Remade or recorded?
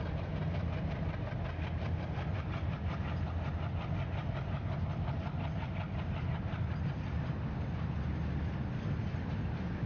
recorded